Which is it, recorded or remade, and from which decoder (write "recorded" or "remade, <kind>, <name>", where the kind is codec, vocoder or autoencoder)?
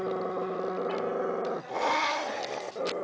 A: recorded